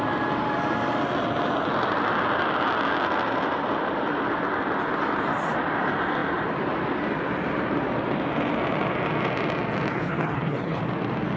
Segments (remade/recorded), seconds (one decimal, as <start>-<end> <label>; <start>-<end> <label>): 0.0-9.9 recorded; 9.9-10.8 remade; 10.8-11.4 recorded

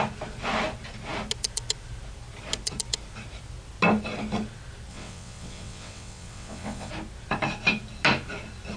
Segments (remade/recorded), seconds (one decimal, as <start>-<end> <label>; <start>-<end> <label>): 0.0-4.9 recorded; 4.9-6.9 remade; 6.9-8.8 recorded

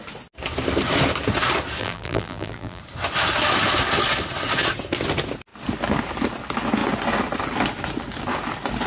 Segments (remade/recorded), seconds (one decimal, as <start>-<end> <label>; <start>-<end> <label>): 0.0-1.8 recorded; 1.8-2.8 remade; 2.8-8.9 recorded

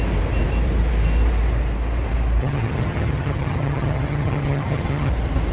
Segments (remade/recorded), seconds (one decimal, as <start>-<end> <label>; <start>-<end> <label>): 0.0-2.4 recorded; 2.4-5.1 remade; 5.1-5.5 recorded